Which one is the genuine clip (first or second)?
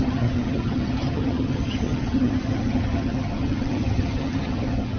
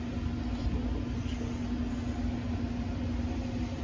second